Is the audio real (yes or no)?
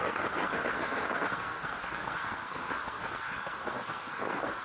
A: no